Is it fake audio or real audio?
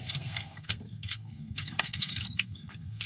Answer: fake